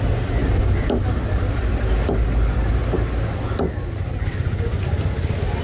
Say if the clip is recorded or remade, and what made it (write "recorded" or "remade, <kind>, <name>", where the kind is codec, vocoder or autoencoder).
recorded